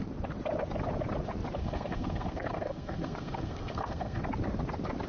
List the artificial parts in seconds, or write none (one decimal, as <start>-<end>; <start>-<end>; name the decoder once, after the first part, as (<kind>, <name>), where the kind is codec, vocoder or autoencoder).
1.6-4.2 (codec, SNAC)